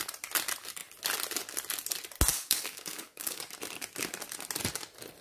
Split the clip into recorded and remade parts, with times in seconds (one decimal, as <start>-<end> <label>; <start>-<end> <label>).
0.0-2.3 recorded; 2.3-3.4 remade; 3.4-5.2 recorded